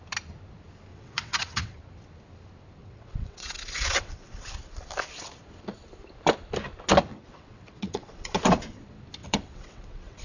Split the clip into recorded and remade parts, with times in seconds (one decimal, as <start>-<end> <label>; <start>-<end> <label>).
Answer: 0.0-0.9 recorded; 0.9-1.8 remade; 1.8-2.8 recorded; 2.8-4.5 remade; 4.5-7.1 recorded; 7.1-8.4 remade; 8.4-9.2 recorded; 9.2-10.2 remade